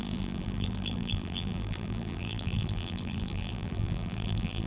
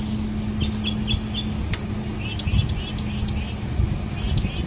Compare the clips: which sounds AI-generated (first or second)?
first